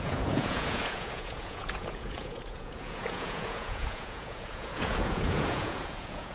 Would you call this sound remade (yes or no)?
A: yes